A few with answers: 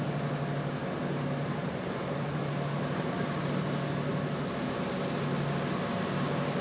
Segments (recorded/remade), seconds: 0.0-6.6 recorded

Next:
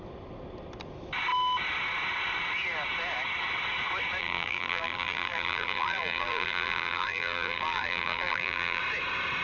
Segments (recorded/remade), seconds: 0.0-4.2 recorded; 4.2-8.8 remade; 8.8-9.4 recorded